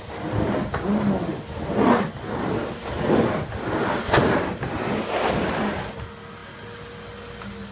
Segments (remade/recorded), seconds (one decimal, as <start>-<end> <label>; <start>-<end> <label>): 0.0-7.7 recorded